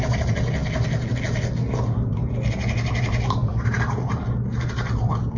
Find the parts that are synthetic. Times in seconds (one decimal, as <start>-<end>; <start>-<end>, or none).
3.5-4.2